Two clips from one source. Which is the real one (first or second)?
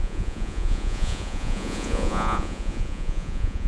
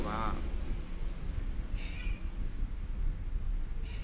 second